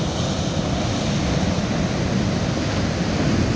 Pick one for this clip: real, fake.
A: real